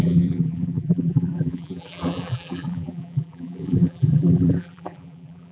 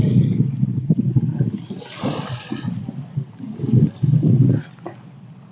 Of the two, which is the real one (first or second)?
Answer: second